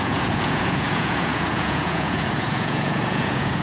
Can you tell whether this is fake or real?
fake